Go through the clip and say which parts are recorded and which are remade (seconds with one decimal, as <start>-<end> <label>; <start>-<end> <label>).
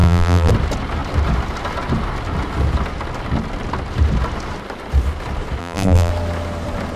0.0-0.5 remade; 0.5-5.6 recorded; 5.6-6.1 remade; 6.1-7.0 recorded